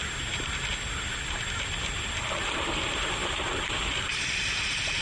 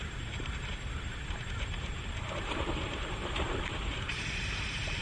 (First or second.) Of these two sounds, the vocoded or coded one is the second